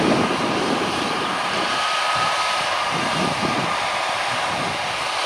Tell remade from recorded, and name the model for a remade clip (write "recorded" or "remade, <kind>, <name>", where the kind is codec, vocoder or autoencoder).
recorded